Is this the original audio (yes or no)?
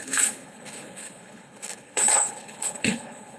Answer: no